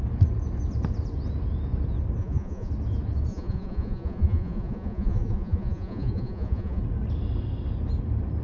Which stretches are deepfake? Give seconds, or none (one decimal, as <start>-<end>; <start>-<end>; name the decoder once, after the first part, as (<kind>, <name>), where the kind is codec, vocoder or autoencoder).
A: 2.2-2.7 (vocoder, Vocos); 3.3-6.8